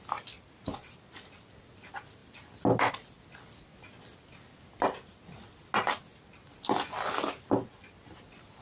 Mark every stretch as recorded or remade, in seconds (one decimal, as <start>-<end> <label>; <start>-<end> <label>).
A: 0.0-8.6 recorded

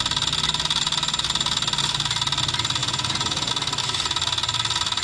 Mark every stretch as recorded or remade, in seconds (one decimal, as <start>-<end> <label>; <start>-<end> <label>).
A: 0.0-2.8 recorded; 2.8-3.5 remade; 3.5-5.0 recorded

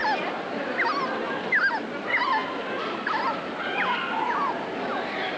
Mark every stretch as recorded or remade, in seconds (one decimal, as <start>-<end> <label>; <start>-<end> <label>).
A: 0.0-5.4 recorded

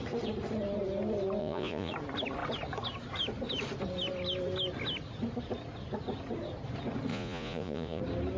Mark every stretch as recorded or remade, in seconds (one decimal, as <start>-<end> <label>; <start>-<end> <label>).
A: 0.0-1.4 recorded; 1.4-1.9 remade; 1.9-7.1 recorded; 7.1-8.0 remade; 8.0-8.4 recorded